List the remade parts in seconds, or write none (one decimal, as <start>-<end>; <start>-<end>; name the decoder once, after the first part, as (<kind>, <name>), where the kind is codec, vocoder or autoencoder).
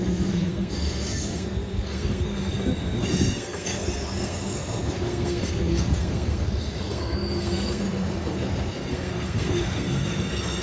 0.0-10.6 (codec, SNAC)